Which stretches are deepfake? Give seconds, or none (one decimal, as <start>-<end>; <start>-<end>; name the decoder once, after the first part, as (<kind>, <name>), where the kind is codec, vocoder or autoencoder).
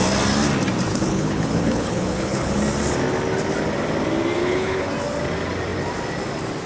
0.9-2.6 (codec, HILCodec); 4.4-4.9